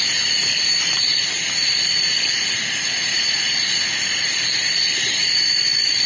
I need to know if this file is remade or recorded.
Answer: recorded